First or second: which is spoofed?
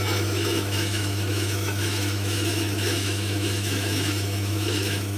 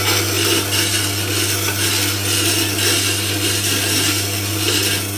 first